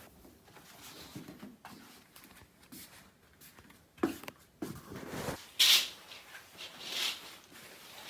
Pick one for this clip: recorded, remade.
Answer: recorded